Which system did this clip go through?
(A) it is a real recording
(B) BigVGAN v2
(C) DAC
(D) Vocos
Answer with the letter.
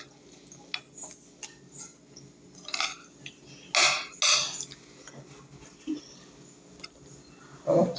A